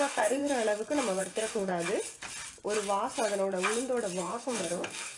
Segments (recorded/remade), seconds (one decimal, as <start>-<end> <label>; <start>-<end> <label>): 0.0-0.4 remade; 0.4-1.2 recorded; 1.2-1.7 remade; 1.7-4.2 recorded; 4.2-5.2 remade